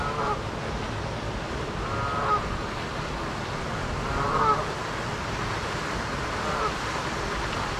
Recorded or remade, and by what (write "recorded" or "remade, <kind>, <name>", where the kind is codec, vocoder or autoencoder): recorded